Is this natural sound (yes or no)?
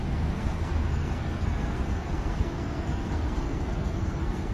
no